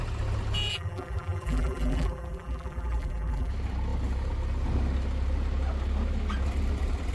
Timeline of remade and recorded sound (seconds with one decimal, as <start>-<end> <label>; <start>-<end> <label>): 0.0-0.7 recorded; 0.7-3.5 remade; 3.5-7.1 recorded